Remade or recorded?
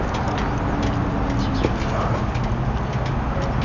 recorded